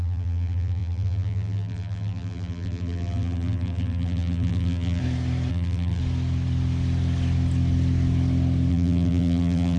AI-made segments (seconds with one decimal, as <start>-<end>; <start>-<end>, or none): 0.0-5.0; 5.5-6.0; 8.7-9.8